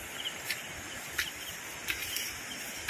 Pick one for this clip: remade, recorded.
recorded